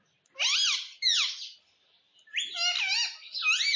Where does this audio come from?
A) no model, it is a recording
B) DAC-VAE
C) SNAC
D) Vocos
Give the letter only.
A